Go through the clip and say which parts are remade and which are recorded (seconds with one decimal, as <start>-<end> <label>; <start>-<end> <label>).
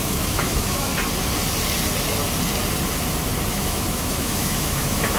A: 0.0-0.9 remade; 0.9-3.5 recorded; 3.5-5.2 remade